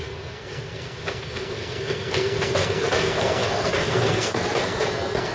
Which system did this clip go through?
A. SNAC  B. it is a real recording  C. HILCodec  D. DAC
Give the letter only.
A